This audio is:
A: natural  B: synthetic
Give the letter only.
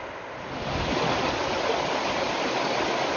A